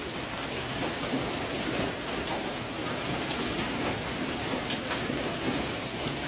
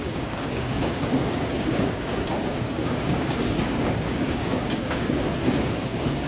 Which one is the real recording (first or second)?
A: first